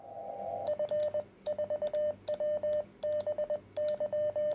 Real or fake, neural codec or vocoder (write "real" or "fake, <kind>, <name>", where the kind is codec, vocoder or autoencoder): real